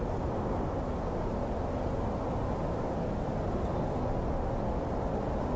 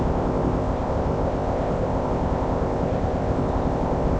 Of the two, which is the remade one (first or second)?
second